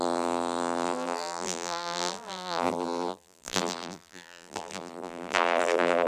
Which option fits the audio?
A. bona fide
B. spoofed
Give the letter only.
B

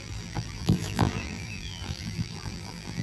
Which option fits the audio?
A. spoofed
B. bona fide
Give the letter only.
A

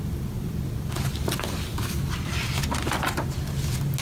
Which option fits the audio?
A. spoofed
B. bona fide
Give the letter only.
B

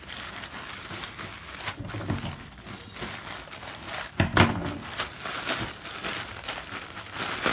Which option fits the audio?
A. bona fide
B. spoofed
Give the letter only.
A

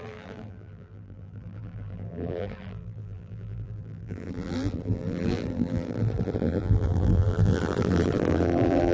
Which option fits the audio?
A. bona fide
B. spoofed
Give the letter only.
B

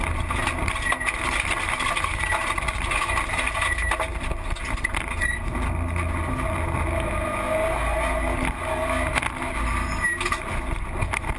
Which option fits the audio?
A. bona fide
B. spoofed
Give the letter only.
A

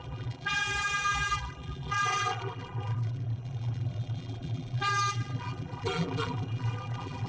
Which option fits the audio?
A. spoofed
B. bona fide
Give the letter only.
A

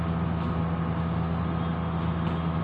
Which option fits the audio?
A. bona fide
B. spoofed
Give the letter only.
A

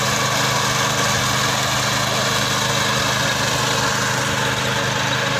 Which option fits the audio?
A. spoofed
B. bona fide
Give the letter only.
B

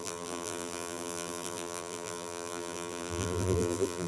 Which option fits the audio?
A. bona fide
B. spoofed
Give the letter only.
B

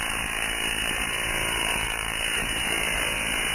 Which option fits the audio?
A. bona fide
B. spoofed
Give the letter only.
B